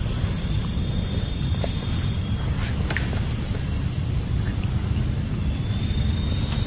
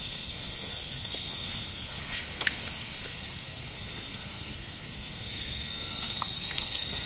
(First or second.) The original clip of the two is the first